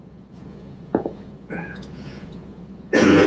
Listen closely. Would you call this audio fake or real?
fake